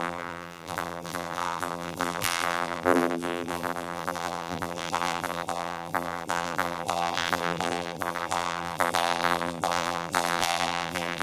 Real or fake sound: fake